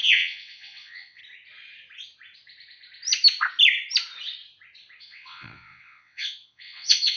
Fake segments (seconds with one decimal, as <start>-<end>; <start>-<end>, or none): 0.0-1.2; 5.0-7.2

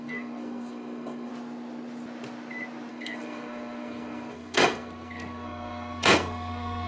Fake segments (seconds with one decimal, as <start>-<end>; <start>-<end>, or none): 0.0-1.3; 2.9-6.9

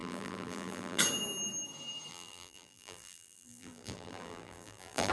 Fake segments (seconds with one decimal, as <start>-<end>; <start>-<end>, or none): 0.0-1.0; 2.1-5.1

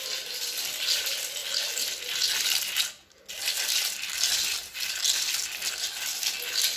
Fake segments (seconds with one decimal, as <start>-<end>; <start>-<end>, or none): none

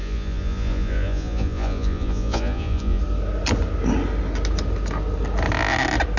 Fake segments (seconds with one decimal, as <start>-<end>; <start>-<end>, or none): 0.0-3.0

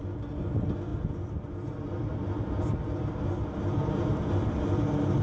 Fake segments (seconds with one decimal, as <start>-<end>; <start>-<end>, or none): none

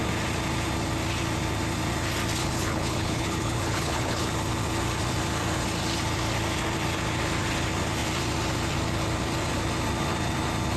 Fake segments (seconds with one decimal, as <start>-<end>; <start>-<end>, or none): 2.4-4.3

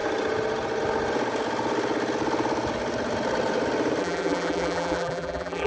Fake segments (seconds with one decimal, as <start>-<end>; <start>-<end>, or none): 4.0-5.7